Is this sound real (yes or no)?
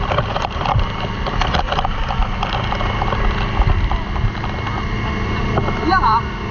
yes